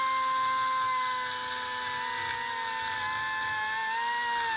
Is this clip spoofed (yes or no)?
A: no